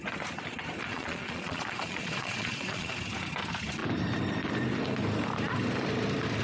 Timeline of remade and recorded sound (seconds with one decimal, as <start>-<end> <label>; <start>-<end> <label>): 0.0-0.9 recorded; 0.9-2.9 remade; 2.9-6.4 recorded